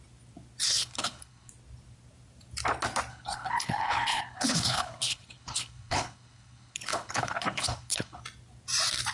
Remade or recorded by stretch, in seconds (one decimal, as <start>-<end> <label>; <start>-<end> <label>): 0.0-0.6 recorded; 0.6-1.5 remade; 1.5-3.1 recorded; 3.1-8.2 remade; 8.2-9.1 recorded